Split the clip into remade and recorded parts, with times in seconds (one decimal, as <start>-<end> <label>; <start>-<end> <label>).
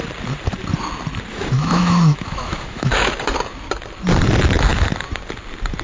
0.0-1.3 recorded; 1.3-3.1 remade; 3.1-5.8 recorded